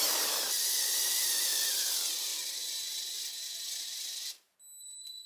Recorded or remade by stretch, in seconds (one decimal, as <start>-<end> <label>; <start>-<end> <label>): 0.0-2.3 recorded; 2.3-3.2 remade; 3.2-3.9 recorded; 3.9-4.5 remade; 4.5-5.3 recorded